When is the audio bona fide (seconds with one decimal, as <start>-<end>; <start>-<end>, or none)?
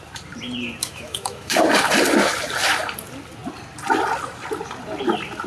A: 0.0-0.8; 1.6-5.5